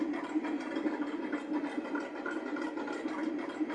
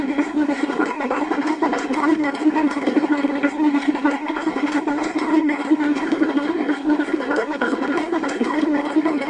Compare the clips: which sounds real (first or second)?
first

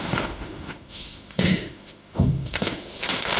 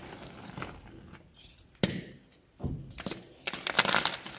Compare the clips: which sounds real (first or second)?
second